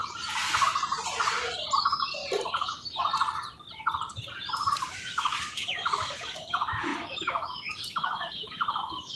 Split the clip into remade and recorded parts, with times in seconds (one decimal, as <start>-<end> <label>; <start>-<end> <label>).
0.0-1.8 recorded; 1.8-2.2 remade; 2.2-4.9 recorded; 4.9-9.2 remade